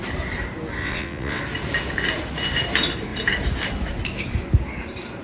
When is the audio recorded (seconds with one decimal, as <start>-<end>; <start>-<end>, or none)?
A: 0.0-0.8; 1.4-5.2